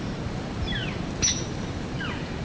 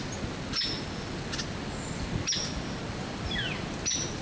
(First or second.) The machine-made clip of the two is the first